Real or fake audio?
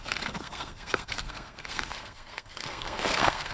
fake